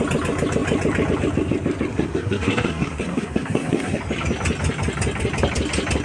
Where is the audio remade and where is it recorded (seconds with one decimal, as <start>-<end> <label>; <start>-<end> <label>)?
0.0-1.9 recorded; 1.9-4.0 remade; 4.0-6.0 recorded